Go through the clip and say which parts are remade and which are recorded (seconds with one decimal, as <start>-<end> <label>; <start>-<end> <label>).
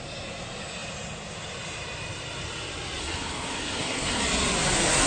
0.0-3.0 recorded; 3.0-4.2 remade; 4.2-5.1 recorded